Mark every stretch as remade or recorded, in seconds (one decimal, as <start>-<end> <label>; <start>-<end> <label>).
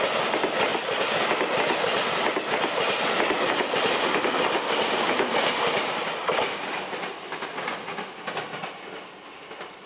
0.0-9.9 recorded